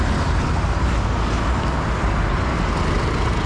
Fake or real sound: real